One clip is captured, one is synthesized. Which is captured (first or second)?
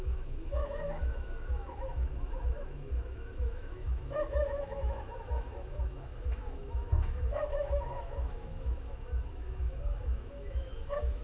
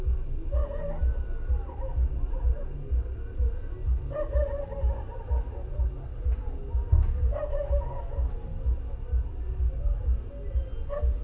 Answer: second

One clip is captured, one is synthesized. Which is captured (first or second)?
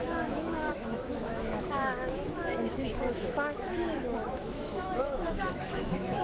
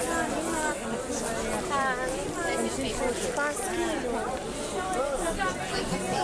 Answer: second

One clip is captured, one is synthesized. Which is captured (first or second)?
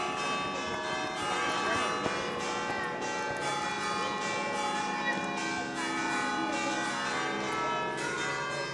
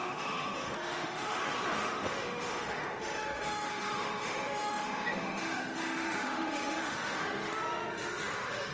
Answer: first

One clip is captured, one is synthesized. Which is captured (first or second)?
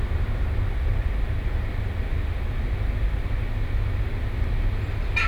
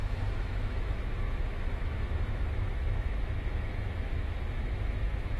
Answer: first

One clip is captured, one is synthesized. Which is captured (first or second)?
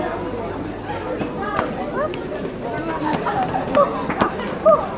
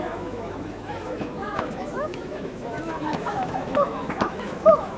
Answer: first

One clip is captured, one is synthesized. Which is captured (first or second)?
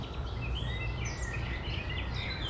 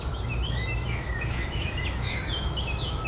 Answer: first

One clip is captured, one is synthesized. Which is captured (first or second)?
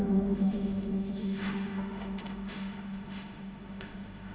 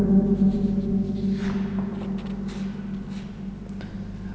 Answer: second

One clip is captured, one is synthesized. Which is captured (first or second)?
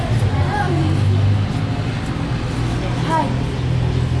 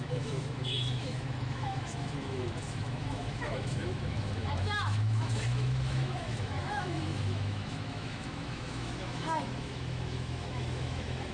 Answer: first